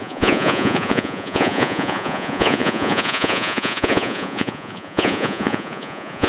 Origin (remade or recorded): remade